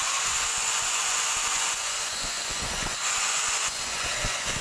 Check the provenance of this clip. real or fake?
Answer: fake